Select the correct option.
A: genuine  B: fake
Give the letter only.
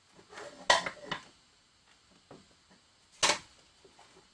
A